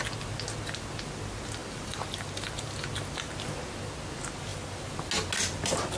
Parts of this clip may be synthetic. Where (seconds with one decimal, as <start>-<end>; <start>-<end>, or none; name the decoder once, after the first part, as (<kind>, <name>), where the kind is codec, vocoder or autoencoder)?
1.6-2.9 (vocoder, BigVGAN v2)